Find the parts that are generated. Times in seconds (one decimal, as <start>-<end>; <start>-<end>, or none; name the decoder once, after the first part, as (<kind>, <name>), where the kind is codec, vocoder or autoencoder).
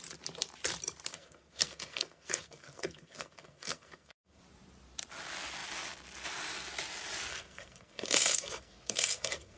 1.1-4.4 (codec, SNAC); 7.3-9.6